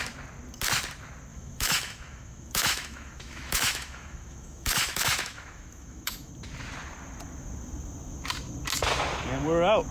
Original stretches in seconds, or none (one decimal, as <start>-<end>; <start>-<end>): 0.0-1.3; 6.3-9.9